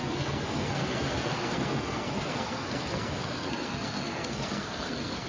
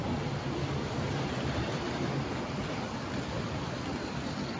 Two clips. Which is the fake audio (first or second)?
first